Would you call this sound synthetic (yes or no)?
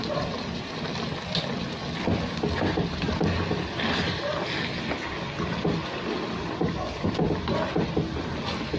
no